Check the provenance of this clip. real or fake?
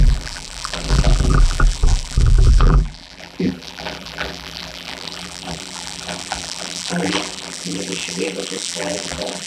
fake